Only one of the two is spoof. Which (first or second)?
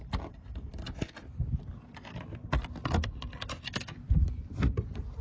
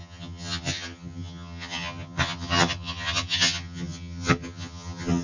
second